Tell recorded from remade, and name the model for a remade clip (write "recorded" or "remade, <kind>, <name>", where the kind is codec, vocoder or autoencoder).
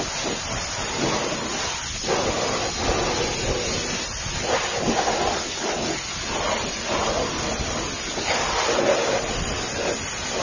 recorded